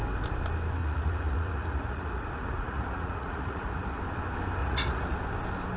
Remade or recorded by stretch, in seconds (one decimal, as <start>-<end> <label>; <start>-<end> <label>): 0.0-0.8 recorded; 0.8-4.0 remade; 4.0-4.6 recorded; 4.6-5.2 remade; 5.2-5.8 recorded